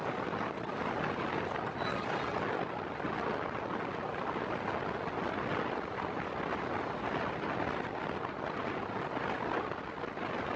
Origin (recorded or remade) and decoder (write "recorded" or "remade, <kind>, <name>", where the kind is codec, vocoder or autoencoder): recorded